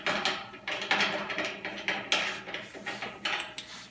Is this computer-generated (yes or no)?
no